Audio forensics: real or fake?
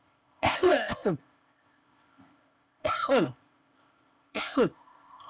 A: fake